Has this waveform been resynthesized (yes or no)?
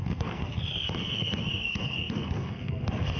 yes